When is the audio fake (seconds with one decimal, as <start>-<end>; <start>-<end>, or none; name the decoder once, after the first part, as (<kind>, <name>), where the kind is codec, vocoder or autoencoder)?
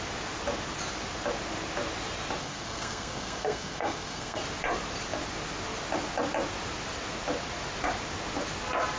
2.4-4.4 (codec, SNAC)